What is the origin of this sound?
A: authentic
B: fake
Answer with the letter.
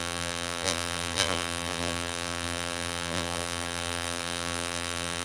B